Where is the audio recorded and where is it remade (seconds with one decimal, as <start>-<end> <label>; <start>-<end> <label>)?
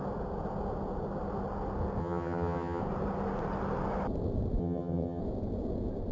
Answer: 0.0-2.0 recorded; 2.0-2.8 remade; 2.8-4.6 recorded; 4.6-5.2 remade; 5.2-6.1 recorded